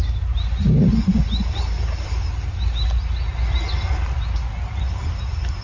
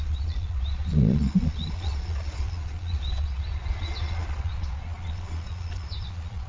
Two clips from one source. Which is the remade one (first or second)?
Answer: second